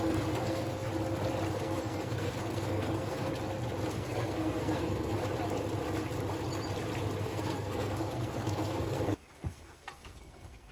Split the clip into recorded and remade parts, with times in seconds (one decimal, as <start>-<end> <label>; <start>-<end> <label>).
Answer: 0.0-0.9 remade; 0.9-1.5 recorded; 1.5-3.3 remade; 3.3-3.9 recorded; 3.9-5.2 remade; 5.2-7.2 recorded; 7.2-10.7 remade